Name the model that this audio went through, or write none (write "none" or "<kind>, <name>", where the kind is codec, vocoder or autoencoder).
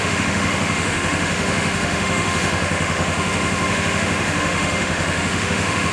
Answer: autoencoder, DAC-VAE